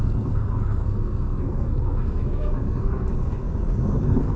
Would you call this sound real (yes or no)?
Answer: no